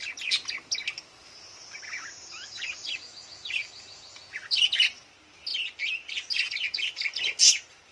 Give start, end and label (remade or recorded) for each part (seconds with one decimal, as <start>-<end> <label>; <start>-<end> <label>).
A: 0.0-7.9 recorded